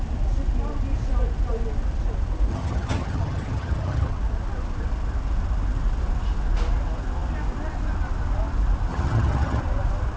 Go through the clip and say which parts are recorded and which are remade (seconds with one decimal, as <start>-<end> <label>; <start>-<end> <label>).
0.0-2.5 recorded; 2.5-4.1 remade; 4.1-8.9 recorded; 8.9-9.6 remade; 9.6-10.2 recorded